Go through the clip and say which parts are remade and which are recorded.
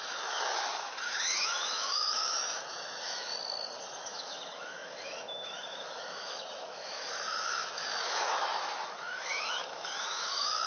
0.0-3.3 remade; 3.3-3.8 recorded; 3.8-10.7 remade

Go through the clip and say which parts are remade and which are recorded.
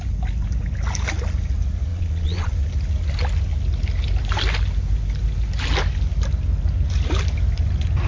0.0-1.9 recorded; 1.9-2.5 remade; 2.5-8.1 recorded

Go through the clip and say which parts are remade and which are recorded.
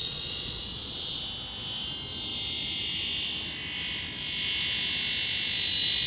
0.0-1.2 remade; 1.2-6.1 recorded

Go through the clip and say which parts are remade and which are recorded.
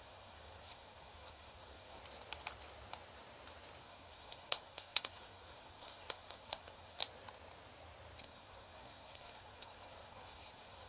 0.0-2.0 remade; 2.0-3.8 recorded; 3.8-7.0 remade; 7.0-8.2 recorded; 8.2-10.9 remade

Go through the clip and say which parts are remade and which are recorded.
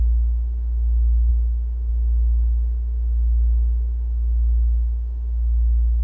0.0-6.0 recorded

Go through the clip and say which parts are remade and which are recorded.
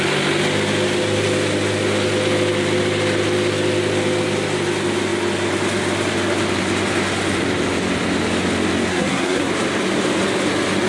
0.0-8.9 recorded; 8.9-9.5 remade; 9.5-10.9 recorded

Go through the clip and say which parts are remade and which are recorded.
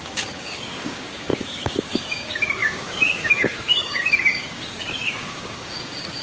0.0-6.2 remade